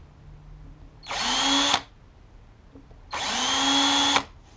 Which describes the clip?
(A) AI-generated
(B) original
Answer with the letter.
B